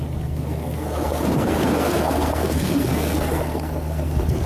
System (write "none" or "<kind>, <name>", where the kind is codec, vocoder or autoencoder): codec, SNAC